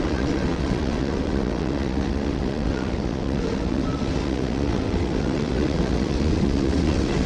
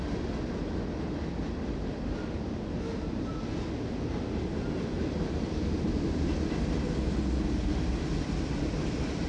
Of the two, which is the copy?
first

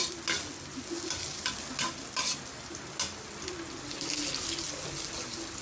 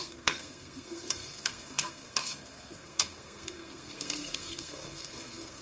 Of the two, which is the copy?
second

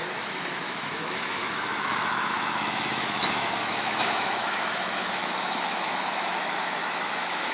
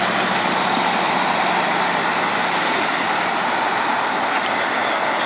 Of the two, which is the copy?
first